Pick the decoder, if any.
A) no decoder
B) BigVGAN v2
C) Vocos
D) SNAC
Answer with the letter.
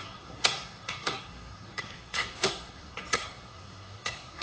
D